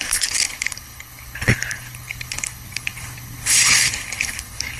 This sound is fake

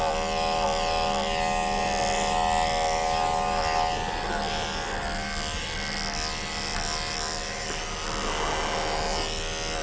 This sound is real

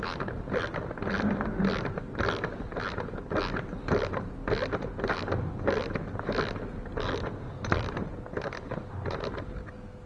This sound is real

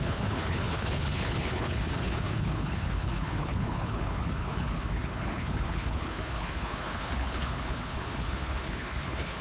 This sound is fake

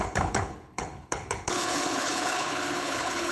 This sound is fake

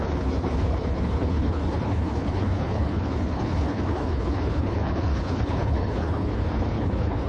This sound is fake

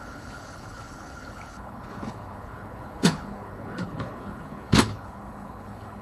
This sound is fake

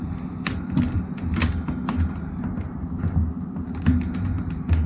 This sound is real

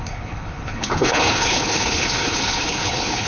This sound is fake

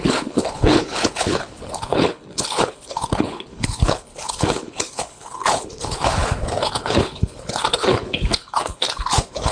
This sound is fake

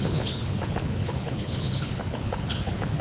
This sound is fake